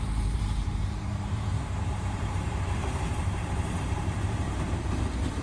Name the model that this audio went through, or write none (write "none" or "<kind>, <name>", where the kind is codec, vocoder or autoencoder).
vocoder, BigVGAN v2